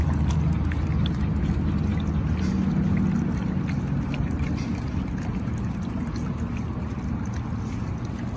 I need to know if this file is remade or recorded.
recorded